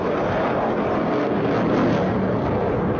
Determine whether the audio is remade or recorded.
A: recorded